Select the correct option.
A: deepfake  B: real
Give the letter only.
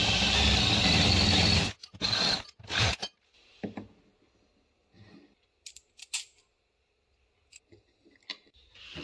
B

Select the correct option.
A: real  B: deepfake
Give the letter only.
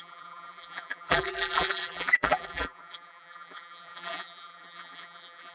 B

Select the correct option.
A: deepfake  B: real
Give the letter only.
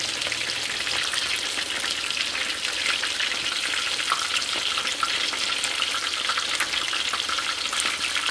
B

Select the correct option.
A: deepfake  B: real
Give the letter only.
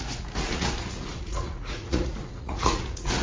A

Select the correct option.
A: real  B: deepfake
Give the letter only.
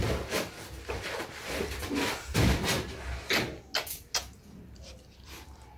A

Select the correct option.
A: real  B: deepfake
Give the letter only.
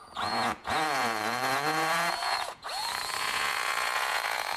B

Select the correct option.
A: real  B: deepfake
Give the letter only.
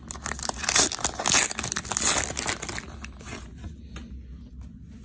A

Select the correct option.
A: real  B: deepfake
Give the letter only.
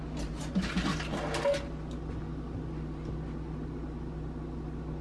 A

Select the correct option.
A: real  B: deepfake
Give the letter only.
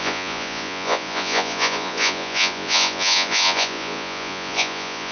B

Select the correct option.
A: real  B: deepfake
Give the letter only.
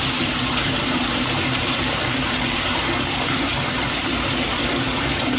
B